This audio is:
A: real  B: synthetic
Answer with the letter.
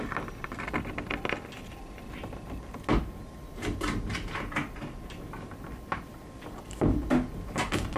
A